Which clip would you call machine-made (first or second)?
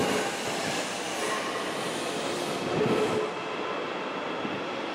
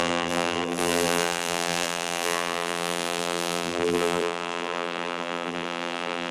second